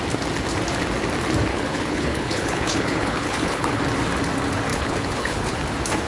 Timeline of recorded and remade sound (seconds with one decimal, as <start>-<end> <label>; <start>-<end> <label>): 0.0-1.5 recorded; 1.5-3.8 remade; 3.8-4.7 recorded; 4.7-5.6 remade; 5.6-6.1 recorded